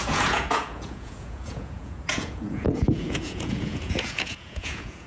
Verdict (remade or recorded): remade